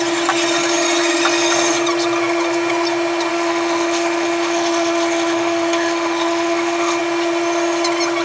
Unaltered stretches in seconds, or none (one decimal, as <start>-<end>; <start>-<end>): 0.0-3.3; 7.0-8.2